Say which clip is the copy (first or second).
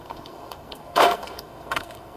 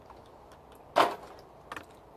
first